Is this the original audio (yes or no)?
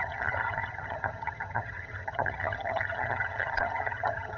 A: no